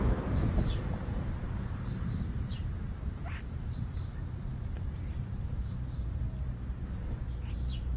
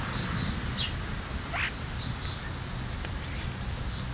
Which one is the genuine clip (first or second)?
second